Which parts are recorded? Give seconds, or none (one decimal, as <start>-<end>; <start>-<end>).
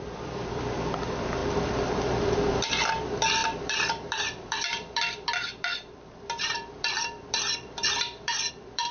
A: none